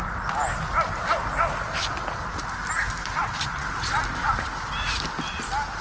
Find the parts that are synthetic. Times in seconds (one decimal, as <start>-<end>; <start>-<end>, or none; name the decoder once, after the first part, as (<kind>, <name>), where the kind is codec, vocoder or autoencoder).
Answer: none